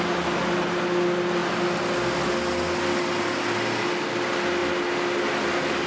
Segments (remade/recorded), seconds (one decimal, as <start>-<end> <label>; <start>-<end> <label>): 0.0-5.9 recorded

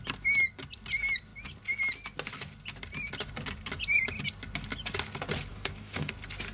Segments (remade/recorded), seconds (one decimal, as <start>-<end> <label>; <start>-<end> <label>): 0.0-5.5 recorded; 5.5-6.1 remade; 6.1-6.5 recorded

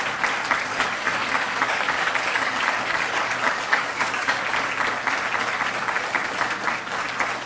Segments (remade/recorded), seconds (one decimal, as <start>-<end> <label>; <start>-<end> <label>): 0.0-0.7 recorded; 0.7-4.4 remade; 4.4-7.5 recorded

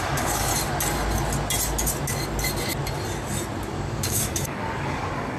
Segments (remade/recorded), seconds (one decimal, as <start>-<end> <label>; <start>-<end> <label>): 0.0-0.5 remade; 0.5-3.7 recorded; 3.7-5.4 remade

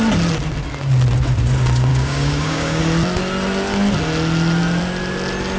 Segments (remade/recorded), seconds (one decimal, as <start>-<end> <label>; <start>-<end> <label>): 0.0-1.9 recorded; 1.9-2.8 remade; 2.8-5.6 recorded

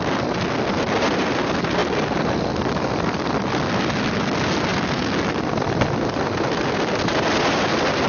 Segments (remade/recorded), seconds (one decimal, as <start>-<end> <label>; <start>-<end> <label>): 0.0-8.1 recorded

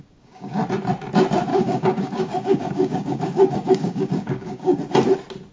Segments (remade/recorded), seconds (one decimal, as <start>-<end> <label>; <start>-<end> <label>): 0.0-0.6 remade; 0.6-1.5 recorded; 1.5-4.8 remade; 4.8-5.5 recorded

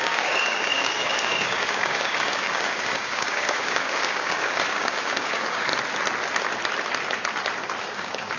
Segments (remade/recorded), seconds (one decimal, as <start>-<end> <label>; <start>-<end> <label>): 0.0-5.7 remade; 5.7-7.8 recorded; 7.8-8.4 remade